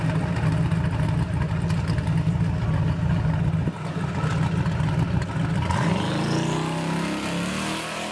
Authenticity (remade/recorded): recorded